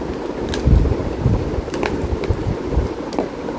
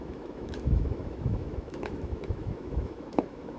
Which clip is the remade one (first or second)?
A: second